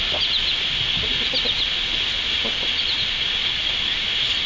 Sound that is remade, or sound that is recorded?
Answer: recorded